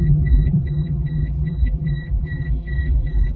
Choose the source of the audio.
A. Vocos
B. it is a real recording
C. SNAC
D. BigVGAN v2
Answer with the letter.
D